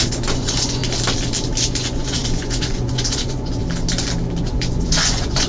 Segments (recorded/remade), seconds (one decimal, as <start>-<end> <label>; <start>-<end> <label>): 0.0-0.8 remade; 0.8-1.6 recorded; 1.6-3.6 remade; 3.6-4.4 recorded; 4.4-5.5 remade